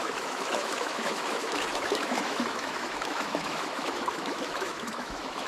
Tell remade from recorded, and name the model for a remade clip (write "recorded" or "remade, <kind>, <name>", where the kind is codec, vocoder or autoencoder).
remade, autoencoder, DAC-VAE